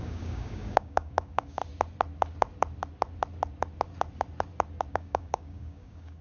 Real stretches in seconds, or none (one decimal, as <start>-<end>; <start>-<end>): 1.6-4.9